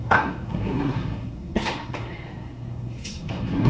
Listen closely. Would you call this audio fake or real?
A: fake